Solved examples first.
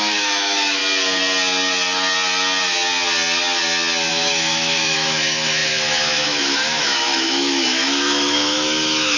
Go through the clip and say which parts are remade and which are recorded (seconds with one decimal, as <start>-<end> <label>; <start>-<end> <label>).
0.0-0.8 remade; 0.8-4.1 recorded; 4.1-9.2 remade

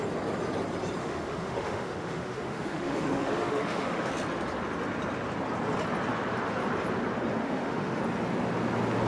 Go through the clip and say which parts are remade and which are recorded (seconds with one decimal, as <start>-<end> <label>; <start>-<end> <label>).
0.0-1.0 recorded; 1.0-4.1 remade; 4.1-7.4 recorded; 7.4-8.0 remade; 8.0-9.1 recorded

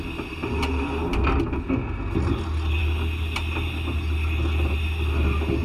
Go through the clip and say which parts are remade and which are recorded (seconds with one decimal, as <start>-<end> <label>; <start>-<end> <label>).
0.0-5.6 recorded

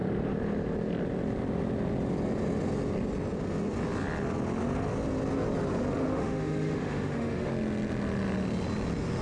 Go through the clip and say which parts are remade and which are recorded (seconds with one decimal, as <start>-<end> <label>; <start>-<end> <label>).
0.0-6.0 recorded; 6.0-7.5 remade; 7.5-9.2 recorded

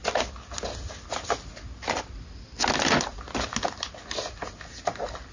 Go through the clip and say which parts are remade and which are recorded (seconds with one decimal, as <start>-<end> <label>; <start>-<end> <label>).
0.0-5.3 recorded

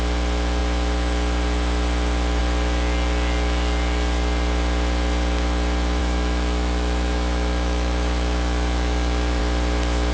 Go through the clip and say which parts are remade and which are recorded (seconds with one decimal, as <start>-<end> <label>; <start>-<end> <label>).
0.0-6.0 recorded; 6.0-9.4 remade; 9.4-10.1 recorded

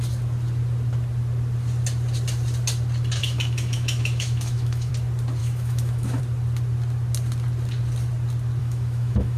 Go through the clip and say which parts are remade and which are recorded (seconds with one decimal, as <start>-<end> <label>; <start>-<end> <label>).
0.0-3.2 recorded; 3.2-4.9 remade; 4.9-5.4 recorded; 5.4-6.2 remade; 6.2-8.6 recorded; 8.6-9.4 remade

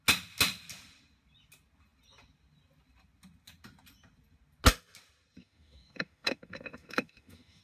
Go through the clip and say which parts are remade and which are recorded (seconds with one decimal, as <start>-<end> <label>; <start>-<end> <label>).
0.0-5.4 recorded; 5.4-7.6 remade